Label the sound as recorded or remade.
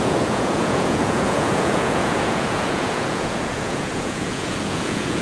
remade